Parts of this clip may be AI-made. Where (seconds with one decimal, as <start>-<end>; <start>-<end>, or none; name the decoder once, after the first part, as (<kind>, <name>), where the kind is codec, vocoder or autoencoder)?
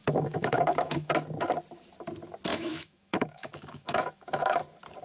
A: 0.0-1.1 (autoencoder, DAC-VAE); 2.5-4.6